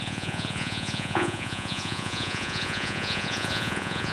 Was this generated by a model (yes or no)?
yes